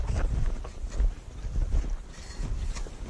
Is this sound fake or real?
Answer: real